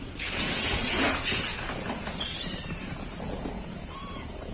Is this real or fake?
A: fake